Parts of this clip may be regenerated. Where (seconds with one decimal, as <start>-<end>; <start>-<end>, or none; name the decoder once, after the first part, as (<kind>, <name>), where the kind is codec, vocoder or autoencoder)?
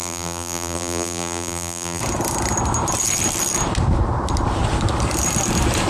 0.0-2.0 (vocoder, BigVGAN v2)